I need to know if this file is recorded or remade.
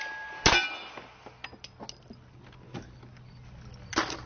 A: recorded